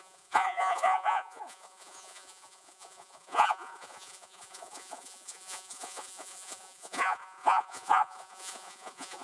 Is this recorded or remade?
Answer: remade